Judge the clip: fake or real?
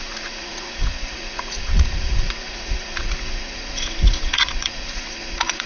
fake